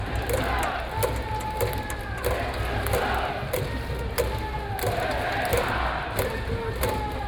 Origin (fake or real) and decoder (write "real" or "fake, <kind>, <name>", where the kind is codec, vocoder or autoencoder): real